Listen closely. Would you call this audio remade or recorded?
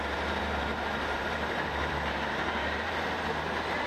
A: remade